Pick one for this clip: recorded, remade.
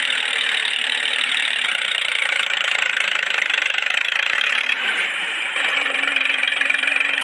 remade